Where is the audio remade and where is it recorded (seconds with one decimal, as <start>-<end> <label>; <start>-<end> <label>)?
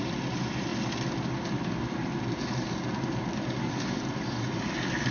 0.0-5.1 recorded